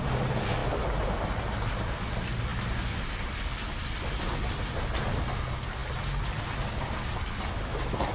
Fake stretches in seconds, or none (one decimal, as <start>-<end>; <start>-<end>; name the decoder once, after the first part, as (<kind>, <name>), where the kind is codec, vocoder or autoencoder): none